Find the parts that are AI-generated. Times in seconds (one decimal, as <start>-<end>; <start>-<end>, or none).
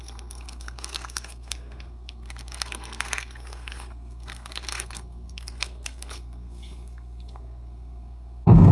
0.0-8.7